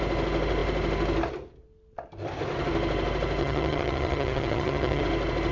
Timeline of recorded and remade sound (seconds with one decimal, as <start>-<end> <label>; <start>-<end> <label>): 0.0-3.4 recorded; 3.4-5.0 remade; 5.0-5.5 recorded